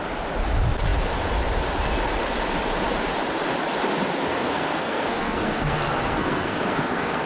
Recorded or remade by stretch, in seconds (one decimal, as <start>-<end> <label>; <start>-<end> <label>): 0.0-4.3 recorded; 4.3-7.3 remade

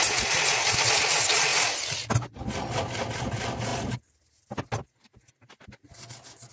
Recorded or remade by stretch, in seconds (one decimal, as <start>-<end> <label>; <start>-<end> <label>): 0.0-6.5 recorded

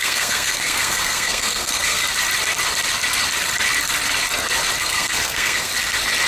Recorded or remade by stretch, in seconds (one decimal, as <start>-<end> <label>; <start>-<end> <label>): 0.0-2.0 remade; 2.0-4.8 recorded; 4.8-5.7 remade; 5.7-6.3 recorded

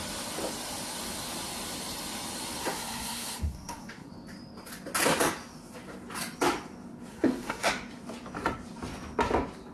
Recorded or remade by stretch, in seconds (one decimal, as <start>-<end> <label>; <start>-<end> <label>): 0.0-2.6 recorded; 2.6-4.1 remade; 4.1-7.1 recorded; 7.1-7.7 remade; 7.7-9.7 recorded